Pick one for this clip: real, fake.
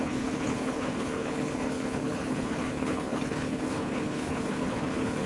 fake